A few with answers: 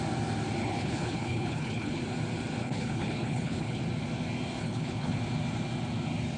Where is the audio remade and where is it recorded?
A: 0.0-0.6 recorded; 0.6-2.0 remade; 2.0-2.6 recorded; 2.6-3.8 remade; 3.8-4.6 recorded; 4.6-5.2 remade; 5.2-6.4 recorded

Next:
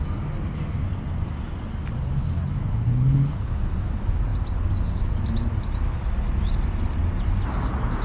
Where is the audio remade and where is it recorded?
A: 0.0-2.7 recorded; 2.7-3.5 remade; 3.5-8.0 recorded

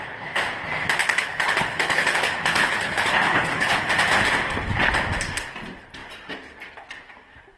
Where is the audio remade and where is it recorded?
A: 0.0-1.0 recorded; 1.0-3.9 remade; 3.9-7.6 recorded

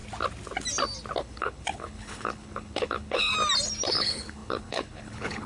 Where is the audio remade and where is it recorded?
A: 0.0-1.2 recorded; 1.2-3.3 remade; 3.3-3.9 recorded; 3.9-5.5 remade